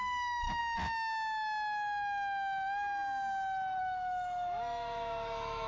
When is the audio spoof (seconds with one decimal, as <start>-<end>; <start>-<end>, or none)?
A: 0.0-0.6; 3.8-5.7